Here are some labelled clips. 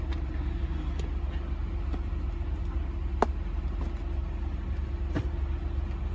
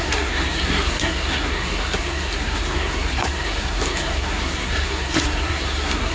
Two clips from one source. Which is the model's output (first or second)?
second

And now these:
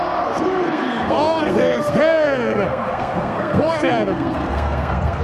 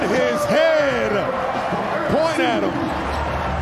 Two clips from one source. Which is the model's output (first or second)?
first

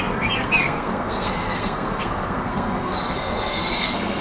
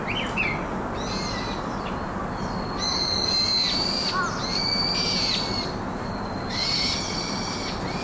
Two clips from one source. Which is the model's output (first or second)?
first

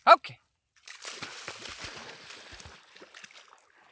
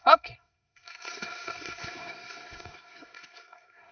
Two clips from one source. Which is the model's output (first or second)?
second